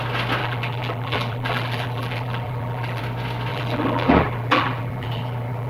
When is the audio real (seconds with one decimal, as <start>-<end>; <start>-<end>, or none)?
0.0-0.4; 3.0-3.5